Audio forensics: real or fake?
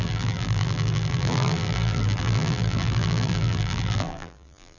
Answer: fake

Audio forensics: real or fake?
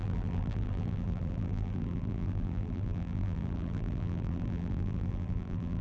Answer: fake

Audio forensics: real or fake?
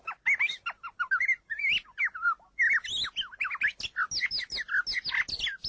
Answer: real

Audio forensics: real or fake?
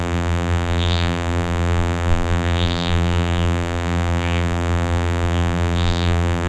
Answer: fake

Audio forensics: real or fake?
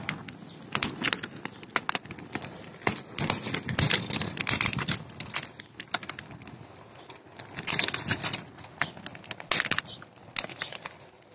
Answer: real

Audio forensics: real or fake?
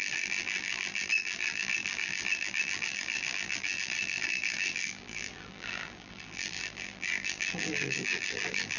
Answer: fake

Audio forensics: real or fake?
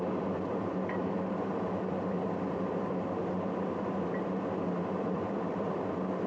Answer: fake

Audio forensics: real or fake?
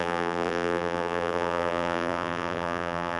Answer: fake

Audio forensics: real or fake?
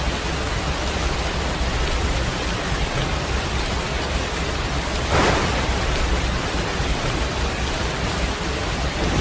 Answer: fake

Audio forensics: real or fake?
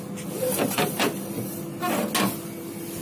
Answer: real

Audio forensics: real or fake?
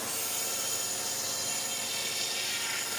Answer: fake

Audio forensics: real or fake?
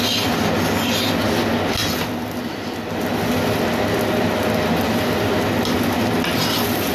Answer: real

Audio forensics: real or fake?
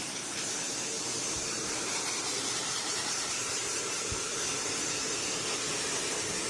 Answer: fake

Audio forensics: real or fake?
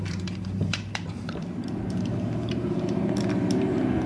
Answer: fake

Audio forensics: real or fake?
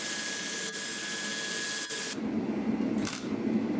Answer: real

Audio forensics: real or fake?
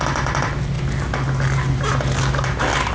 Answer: real